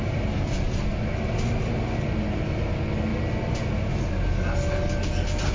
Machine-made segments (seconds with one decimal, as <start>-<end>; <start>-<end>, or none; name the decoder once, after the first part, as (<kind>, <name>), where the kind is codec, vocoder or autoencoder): none